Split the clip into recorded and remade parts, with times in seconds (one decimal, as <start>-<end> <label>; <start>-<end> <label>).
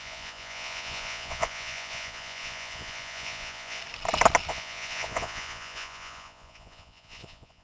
0.0-3.8 remade; 3.8-4.5 recorded; 4.5-7.6 remade